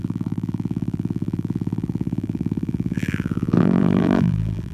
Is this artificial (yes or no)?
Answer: yes